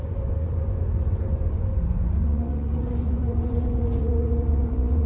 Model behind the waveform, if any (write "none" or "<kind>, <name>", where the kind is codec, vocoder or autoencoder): vocoder, Vocos